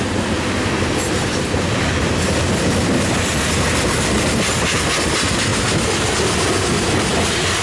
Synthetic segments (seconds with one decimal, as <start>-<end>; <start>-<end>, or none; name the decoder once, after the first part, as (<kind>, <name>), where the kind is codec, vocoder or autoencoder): none